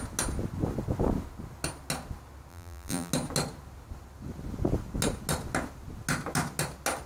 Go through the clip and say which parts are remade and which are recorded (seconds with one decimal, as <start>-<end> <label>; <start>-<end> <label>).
0.0-2.5 recorded; 2.5-3.1 remade; 3.1-7.1 recorded